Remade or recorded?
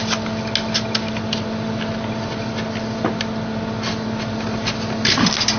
recorded